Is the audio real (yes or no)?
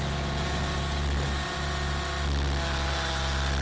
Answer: yes